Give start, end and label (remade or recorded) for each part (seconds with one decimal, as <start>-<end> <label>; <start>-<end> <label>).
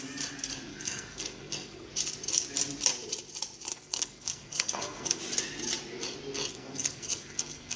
0.0-0.7 recorded; 0.7-1.9 remade; 1.9-3.7 recorded; 3.7-5.2 remade; 5.2-6.5 recorded; 6.5-7.8 remade